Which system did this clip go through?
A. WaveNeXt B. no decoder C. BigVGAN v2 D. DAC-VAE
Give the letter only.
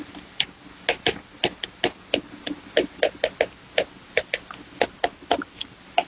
B